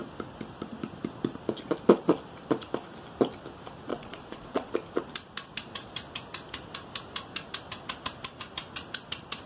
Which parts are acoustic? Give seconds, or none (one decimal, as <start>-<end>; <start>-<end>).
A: 0.0-3.9; 4.7-9.5

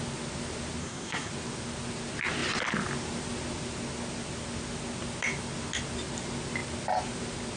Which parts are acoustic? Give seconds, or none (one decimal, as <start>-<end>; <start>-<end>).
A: 0.0-0.8; 1.3-7.6

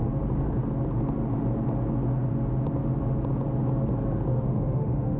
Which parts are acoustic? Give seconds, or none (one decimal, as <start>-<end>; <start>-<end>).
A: 0.0-4.3

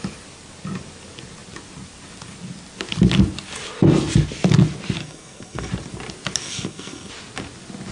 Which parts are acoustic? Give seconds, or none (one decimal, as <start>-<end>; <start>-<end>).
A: 0.0-5.0; 5.7-6.4; 7.1-7.9

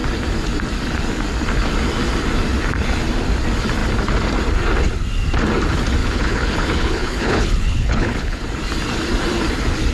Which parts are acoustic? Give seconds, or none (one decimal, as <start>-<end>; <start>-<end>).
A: 0.0-6.0; 8.4-9.9

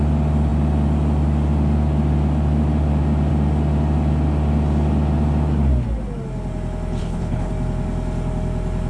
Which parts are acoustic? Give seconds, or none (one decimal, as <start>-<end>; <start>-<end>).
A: 0.0-7.0; 7.5-8.9

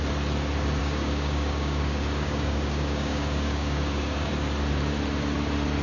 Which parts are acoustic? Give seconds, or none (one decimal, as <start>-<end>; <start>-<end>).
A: 0.0-0.8; 4.3-5.8